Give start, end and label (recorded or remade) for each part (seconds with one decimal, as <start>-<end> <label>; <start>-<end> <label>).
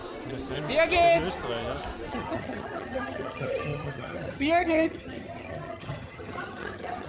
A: 0.0-2.1 recorded; 2.1-7.1 remade